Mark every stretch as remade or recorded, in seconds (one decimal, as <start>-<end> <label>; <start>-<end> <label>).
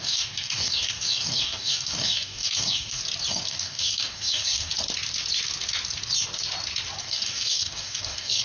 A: 0.0-3.0 remade; 3.0-3.5 recorded; 3.5-4.7 remade; 4.7-7.0 recorded; 7.0-8.4 remade